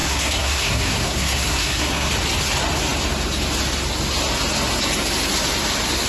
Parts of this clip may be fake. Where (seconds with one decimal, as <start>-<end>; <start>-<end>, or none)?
0.0-2.1